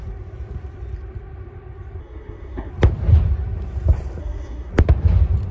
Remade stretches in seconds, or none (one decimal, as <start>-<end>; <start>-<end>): 2.0-2.7; 4.2-4.7